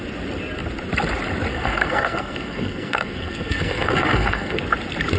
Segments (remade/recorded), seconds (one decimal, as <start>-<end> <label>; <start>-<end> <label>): 0.0-1.5 recorded; 1.5-4.6 remade; 4.6-5.2 recorded